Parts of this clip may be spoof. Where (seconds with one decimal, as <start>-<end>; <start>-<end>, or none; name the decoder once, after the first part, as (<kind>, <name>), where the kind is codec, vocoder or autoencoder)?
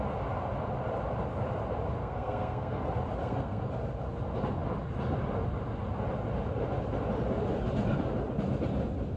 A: 2.0-2.8 (codec, SNAC); 3.2-3.7